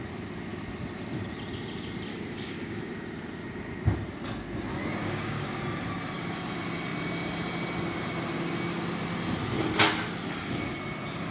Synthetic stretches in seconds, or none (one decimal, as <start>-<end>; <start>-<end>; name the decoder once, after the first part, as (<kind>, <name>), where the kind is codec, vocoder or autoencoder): 2.1-2.9 (codec, DAC); 5.0-5.6